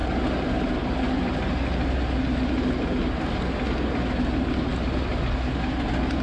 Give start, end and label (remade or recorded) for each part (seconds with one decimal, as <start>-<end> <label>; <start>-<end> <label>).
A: 0.0-6.2 recorded